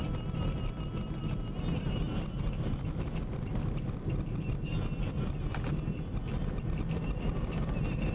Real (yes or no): yes